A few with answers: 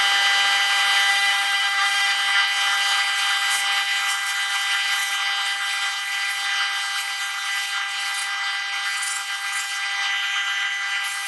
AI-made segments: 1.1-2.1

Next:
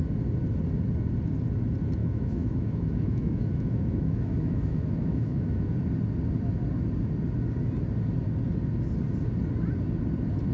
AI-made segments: 2.0-5.7

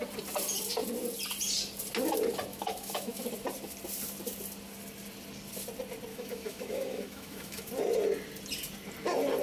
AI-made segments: 2.5-3.2; 6.1-7.7

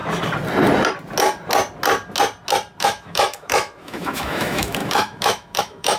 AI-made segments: 2.8-6.0

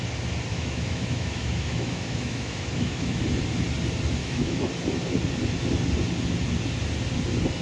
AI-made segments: 0.5-3.2; 4.2-4.7